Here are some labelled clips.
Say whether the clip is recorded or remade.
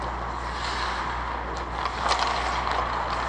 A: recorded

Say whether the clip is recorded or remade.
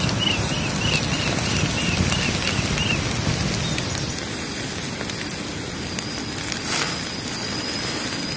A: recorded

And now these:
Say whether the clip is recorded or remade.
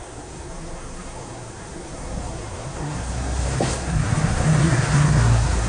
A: remade